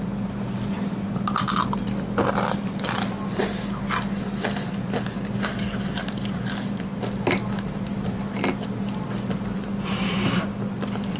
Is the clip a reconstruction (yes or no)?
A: no